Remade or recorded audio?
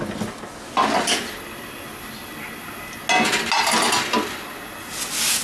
recorded